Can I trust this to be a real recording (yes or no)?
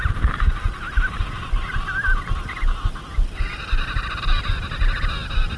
yes